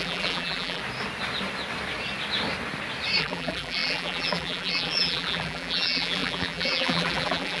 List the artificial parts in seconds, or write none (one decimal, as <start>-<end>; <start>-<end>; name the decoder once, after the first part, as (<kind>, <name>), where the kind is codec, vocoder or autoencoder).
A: 0.0-0.8 (vocoder, BigVGAN v2); 3.2-7.6